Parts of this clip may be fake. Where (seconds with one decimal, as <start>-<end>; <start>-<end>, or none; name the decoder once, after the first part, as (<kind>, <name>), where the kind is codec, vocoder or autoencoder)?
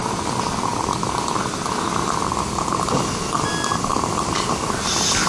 none